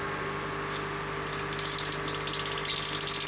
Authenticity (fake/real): real